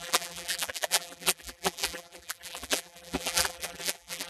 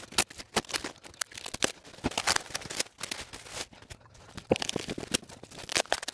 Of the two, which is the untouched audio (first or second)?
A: second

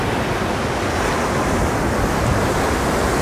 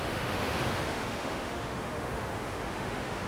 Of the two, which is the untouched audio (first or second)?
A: first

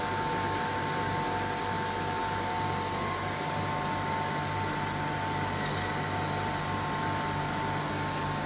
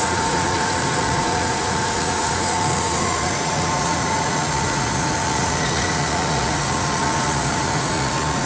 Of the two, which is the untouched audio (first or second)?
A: first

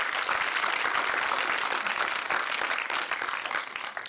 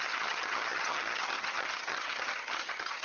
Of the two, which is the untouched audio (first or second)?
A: first